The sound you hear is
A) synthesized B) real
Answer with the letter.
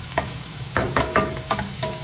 A